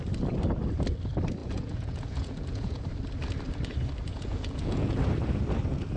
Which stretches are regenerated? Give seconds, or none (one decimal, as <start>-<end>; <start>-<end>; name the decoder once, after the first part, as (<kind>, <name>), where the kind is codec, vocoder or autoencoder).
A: 1.4-2.8 (vocoder, Vocos); 4.1-5.0